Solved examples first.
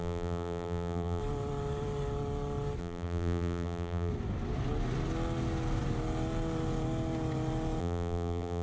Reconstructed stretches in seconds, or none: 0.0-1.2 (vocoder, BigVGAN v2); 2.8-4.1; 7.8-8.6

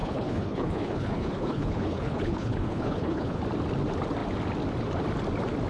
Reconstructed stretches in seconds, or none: 0.0-3.4 (codec, HILCodec)

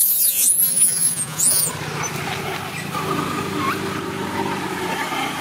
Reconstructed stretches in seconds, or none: 0.0-1.7 (vocoder, Vocos)